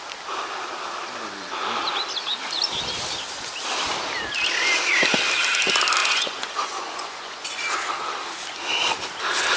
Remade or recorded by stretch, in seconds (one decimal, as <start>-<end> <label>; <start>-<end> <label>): 0.0-6.0 recorded; 6.0-7.6 remade; 7.6-9.6 recorded